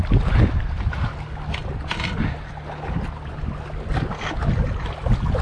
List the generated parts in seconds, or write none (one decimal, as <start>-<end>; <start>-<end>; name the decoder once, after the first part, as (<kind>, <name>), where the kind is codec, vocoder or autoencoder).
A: none